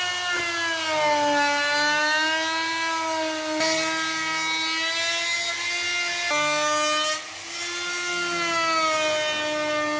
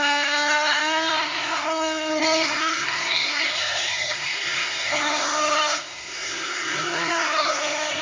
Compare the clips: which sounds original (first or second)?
first